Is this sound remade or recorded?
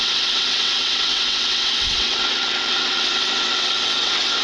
remade